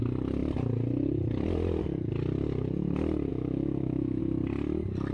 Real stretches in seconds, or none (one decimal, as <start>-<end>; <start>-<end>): 0.0-3.3; 4.2-5.1